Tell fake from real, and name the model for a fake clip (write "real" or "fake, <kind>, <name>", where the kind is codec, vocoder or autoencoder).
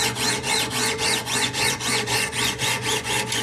fake, vocoder, Vocos